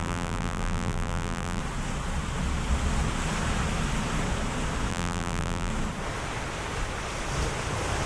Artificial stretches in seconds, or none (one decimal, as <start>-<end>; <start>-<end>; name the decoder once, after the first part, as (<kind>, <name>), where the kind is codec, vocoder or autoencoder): 0.0-1.6 (vocoder, BigVGAN v2); 4.9-5.7